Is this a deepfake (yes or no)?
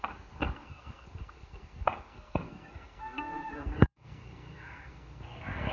yes